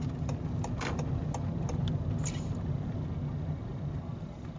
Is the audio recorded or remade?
recorded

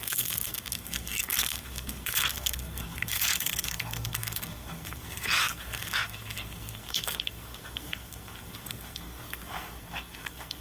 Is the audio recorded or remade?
remade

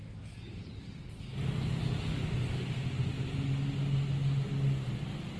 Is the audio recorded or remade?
recorded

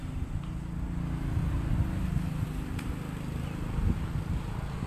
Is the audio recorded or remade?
recorded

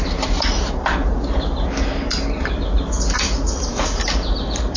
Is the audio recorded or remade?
recorded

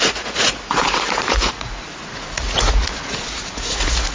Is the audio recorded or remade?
remade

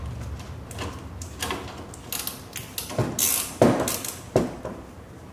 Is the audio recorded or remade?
recorded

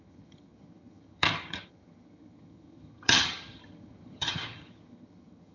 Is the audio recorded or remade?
remade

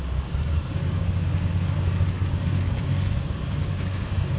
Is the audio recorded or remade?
remade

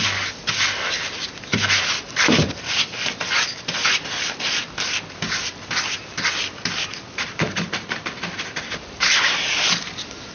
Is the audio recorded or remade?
remade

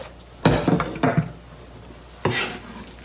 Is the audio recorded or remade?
recorded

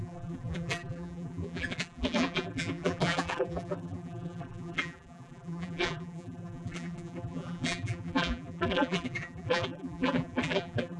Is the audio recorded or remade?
remade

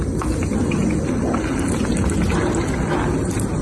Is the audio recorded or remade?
recorded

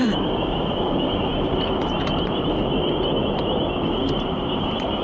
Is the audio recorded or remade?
remade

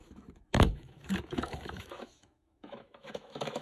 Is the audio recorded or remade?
remade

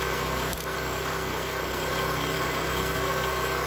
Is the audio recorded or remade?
remade